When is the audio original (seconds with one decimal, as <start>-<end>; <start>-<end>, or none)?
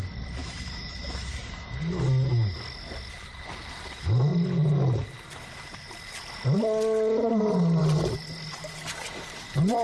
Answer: 0.0-0.4; 1.8-9.8